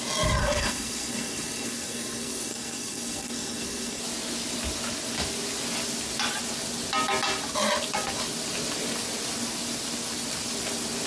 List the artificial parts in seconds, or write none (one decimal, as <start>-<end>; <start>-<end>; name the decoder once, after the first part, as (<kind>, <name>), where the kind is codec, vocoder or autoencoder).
0.4-4.0 (codec, SNAC)